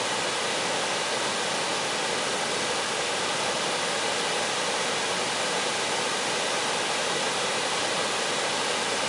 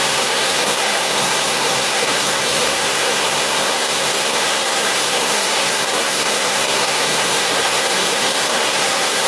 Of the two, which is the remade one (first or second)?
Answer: second